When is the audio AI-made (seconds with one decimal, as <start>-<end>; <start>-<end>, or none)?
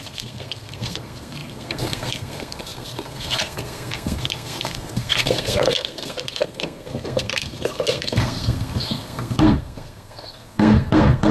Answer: 0.0-11.3